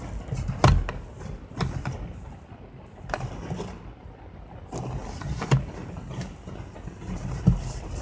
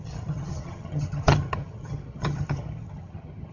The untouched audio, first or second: first